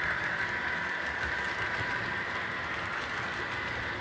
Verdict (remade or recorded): recorded